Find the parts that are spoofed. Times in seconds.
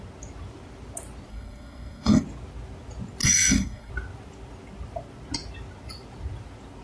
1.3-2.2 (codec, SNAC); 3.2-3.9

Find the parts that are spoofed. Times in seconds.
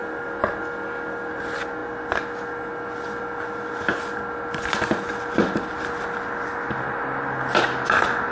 none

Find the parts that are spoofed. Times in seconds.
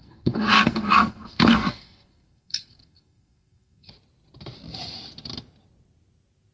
0.0-3.9 (codec, SNAC)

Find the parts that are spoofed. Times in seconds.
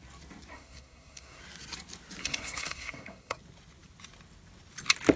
0.5-1.4 (codec, SNAC); 2.2-3.4